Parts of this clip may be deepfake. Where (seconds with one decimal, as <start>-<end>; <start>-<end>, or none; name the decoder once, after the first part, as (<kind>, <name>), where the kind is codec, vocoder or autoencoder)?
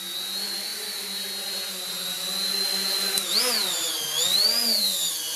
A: none